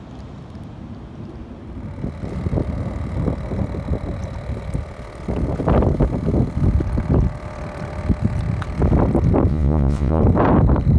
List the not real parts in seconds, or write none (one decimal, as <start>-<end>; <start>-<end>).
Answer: 9.5-10.2